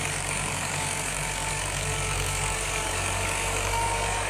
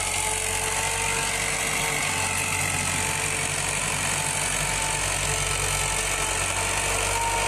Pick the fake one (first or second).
first